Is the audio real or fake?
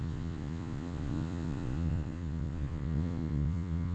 fake